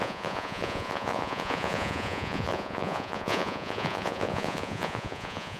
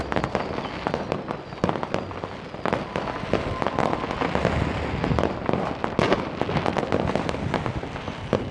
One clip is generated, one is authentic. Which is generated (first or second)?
first